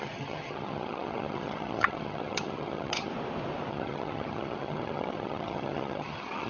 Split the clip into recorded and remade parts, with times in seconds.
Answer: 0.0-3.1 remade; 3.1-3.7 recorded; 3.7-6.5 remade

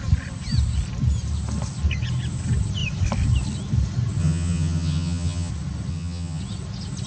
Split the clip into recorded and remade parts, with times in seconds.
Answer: 0.0-4.2 recorded; 4.2-5.5 remade; 5.5-5.9 recorded; 5.9-6.4 remade; 6.4-7.1 recorded

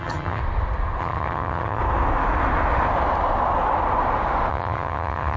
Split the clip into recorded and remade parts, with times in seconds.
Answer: 0.0-0.4 remade; 0.4-1.0 recorded; 1.0-1.8 remade; 1.8-4.5 recorded; 4.5-5.4 remade

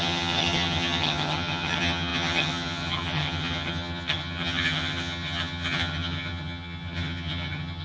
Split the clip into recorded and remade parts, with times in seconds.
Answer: 0.0-7.8 remade